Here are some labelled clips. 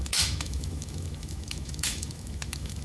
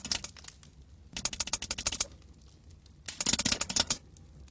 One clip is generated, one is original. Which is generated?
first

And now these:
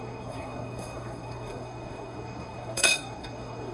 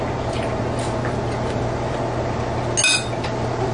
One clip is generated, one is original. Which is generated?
first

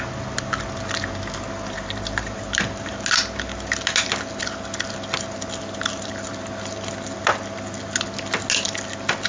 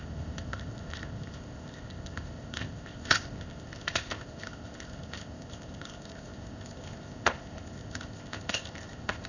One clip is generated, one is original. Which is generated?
second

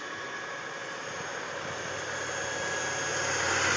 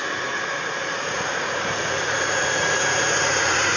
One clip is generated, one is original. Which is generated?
second